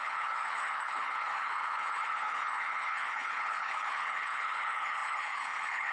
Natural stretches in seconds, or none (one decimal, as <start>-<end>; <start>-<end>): none